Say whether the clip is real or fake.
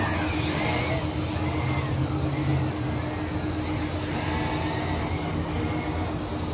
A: real